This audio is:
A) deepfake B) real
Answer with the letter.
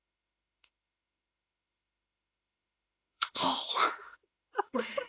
A